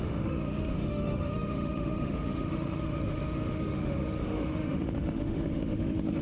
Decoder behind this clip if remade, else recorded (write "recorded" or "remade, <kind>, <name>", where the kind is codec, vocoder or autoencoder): remade, autoencoder, DAC-VAE